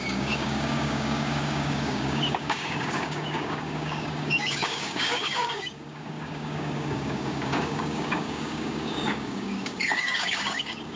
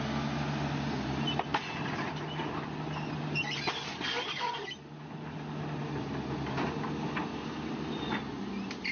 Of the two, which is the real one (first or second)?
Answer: second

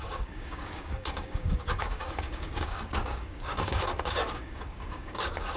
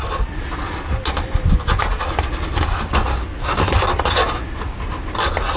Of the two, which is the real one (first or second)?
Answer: second